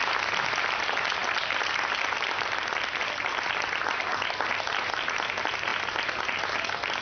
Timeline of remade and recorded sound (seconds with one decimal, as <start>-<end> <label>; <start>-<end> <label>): 0.0-7.0 recorded